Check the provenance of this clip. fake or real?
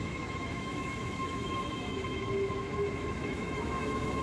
fake